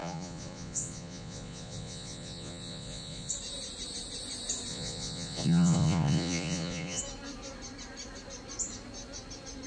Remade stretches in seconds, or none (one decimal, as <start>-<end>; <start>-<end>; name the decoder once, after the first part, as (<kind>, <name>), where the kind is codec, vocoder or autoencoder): 0.0-3.3 (vocoder, Vocos); 4.7-7.0